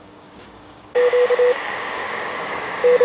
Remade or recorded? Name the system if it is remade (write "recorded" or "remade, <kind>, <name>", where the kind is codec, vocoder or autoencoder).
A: remade, codec, DAC